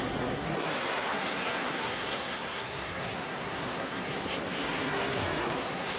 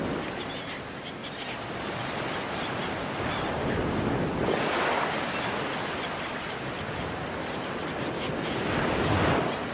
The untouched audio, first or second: second